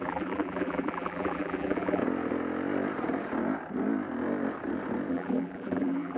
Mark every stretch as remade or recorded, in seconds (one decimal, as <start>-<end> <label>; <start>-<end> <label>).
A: 0.0-2.0 remade; 2.0-5.1 recorded; 5.1-6.2 remade